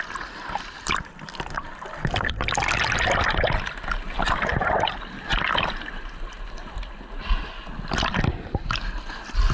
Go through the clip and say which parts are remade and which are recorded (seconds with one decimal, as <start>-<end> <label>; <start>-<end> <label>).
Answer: 0.0-1.7 recorded; 1.7-2.8 remade; 2.8-4.5 recorded; 4.5-6.6 remade; 6.6-9.5 recorded